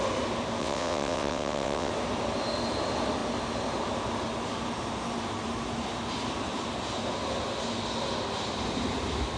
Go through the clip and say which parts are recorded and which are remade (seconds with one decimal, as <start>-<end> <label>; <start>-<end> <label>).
0.0-0.6 recorded; 0.6-1.9 remade; 1.9-9.4 recorded